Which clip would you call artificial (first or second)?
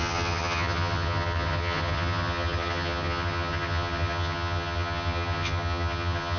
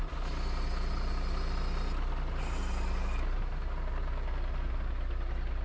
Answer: first